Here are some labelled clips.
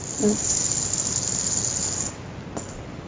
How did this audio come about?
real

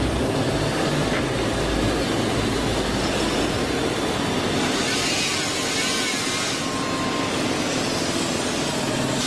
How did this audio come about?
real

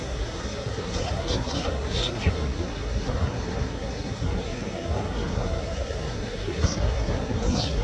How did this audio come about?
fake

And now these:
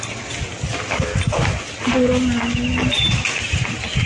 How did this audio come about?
real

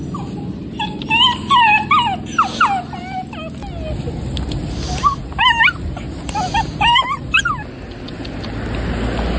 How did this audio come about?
real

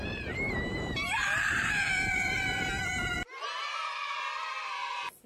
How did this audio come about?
fake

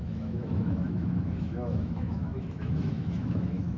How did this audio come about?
fake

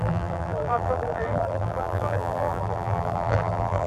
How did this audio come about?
fake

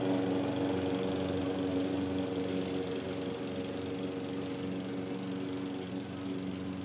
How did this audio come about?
real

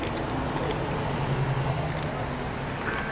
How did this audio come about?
real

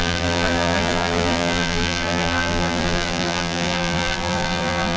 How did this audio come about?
fake